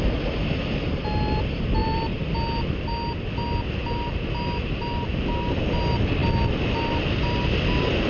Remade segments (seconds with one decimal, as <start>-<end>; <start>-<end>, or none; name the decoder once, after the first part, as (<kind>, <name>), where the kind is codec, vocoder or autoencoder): none

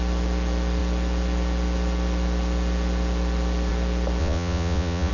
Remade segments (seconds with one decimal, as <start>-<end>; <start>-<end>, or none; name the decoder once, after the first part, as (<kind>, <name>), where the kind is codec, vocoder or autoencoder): 4.2-5.1 (vocoder, Vocos)

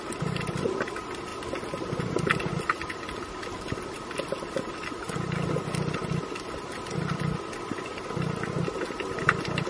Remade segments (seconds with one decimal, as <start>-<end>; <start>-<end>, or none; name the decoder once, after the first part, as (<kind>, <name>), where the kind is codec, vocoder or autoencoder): none

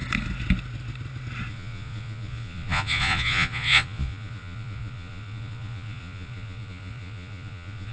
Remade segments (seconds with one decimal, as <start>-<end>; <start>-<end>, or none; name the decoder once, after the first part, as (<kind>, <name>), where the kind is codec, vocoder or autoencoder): 1.5-7.9 (vocoder, Vocos)

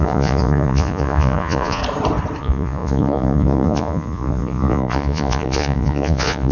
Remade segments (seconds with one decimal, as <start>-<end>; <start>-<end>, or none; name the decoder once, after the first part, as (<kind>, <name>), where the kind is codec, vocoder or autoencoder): 0.0-1.8 (vocoder, Vocos); 2.4-6.5

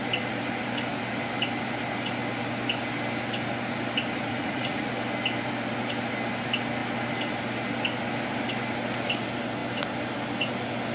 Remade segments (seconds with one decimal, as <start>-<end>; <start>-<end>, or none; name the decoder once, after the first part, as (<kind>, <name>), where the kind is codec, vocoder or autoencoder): 4.3-4.9 (vocoder, Vocos)

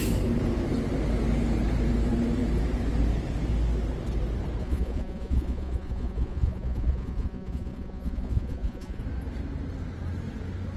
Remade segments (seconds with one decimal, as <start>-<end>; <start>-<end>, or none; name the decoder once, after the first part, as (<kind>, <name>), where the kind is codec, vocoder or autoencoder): 4.6-9.0 (vocoder, Vocos)